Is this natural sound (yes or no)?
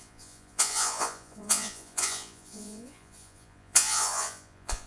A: no